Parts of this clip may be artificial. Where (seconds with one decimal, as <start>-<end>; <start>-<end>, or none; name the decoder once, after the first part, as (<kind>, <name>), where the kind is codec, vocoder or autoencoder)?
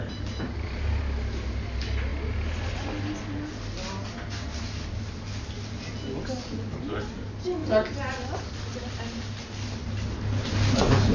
none